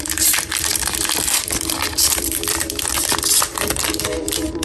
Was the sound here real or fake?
fake